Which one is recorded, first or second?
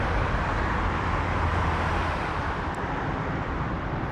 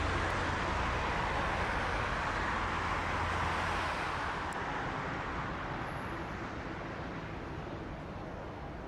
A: second